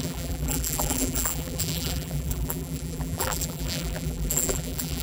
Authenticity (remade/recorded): remade